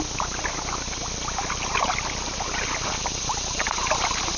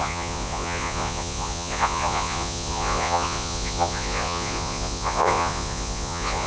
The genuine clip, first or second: first